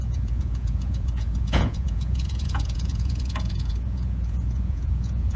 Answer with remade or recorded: remade